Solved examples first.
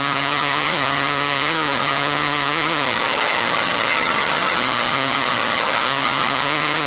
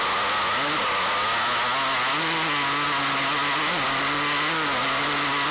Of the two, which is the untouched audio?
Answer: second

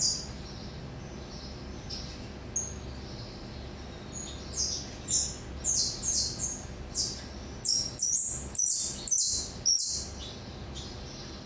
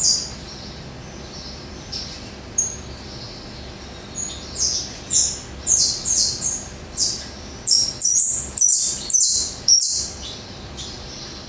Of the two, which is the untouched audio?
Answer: first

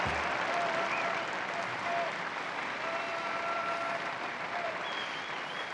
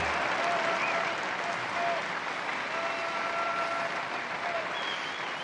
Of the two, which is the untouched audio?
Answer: second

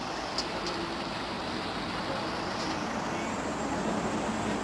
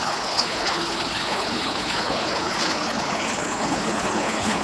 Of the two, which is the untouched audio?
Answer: first